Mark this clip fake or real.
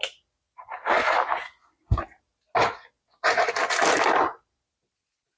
real